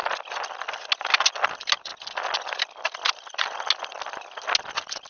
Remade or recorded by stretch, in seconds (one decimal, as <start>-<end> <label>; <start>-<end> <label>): 0.0-5.1 recorded